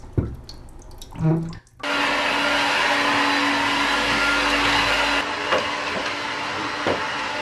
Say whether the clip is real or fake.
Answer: real